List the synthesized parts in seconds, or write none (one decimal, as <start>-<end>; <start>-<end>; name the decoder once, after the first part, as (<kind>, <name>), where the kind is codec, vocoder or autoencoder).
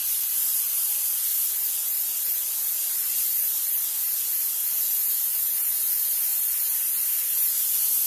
none